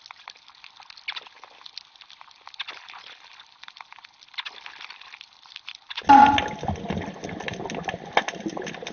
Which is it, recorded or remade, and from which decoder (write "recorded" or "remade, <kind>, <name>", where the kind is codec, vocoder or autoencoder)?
recorded